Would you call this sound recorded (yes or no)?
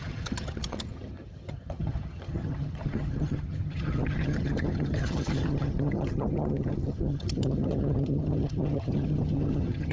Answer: no